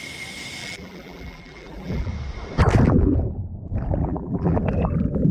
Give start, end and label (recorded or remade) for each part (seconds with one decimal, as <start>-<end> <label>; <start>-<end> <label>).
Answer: 0.0-0.6 recorded; 0.6-2.1 remade; 2.1-4.0 recorded; 4.0-4.6 remade; 4.6-5.3 recorded